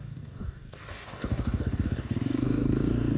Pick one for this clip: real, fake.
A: fake